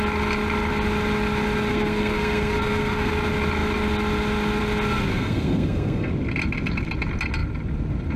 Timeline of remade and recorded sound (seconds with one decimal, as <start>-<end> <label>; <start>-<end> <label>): 0.0-1.7 recorded; 1.7-3.1 remade; 3.1-5.1 recorded; 5.1-6.1 remade; 6.1-8.2 recorded